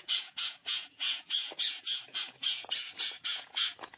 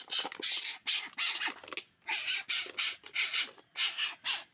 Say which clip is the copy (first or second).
first